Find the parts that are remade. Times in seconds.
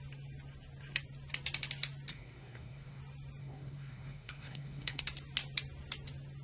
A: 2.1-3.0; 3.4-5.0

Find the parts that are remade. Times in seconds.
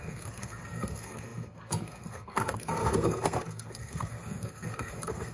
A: 0.0-5.3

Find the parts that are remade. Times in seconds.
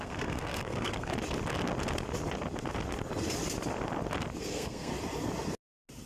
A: 0.0-1.1; 4.4-4.9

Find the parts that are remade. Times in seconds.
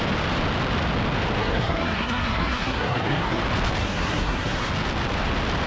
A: 1.4-3.4; 3.8-4.7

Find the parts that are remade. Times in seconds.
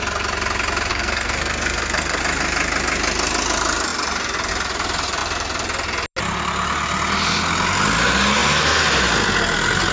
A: 0.9-2.2